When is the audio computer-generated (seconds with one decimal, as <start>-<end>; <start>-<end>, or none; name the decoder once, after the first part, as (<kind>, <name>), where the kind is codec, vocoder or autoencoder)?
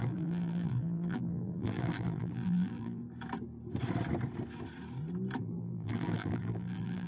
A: 0.0-3.0 (vocoder, BigVGAN v2); 5.4-7.1